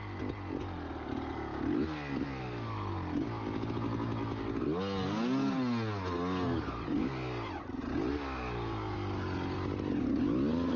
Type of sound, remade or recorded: recorded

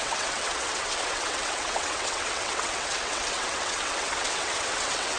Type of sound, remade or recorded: remade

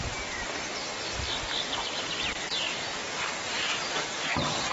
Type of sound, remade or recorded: recorded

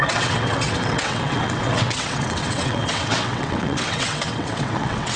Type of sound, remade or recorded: remade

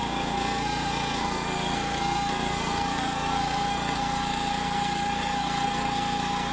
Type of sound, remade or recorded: remade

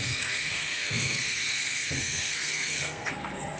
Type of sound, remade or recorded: remade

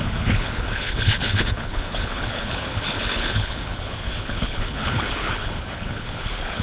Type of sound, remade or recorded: remade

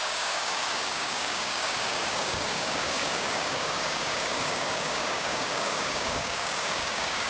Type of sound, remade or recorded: remade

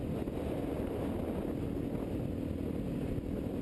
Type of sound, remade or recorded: recorded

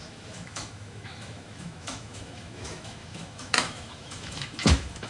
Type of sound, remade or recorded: remade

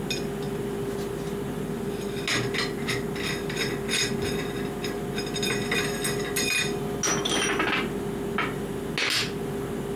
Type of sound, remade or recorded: recorded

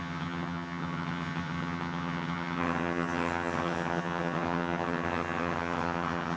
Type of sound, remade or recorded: remade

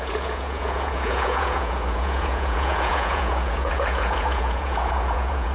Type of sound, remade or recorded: remade